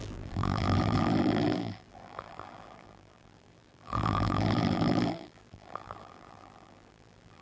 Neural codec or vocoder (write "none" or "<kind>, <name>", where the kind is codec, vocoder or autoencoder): vocoder, BigVGAN v2